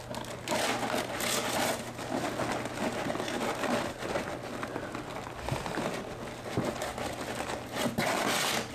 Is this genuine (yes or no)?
yes